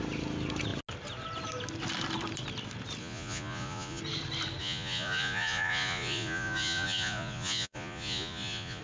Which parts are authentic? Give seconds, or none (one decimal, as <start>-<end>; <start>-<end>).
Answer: 0.0-3.0; 4.0-4.6